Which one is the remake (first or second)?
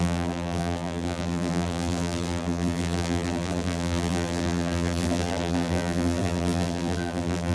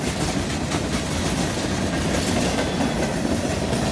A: first